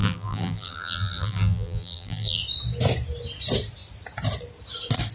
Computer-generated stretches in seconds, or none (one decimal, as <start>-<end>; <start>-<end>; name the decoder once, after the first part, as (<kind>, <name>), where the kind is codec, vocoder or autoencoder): 0.0-2.4 (vocoder, BigVGAN v2)